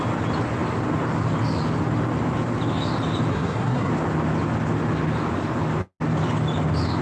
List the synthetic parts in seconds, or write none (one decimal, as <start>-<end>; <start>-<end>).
3.3-3.9